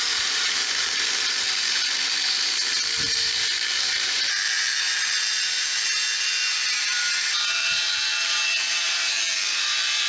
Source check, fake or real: fake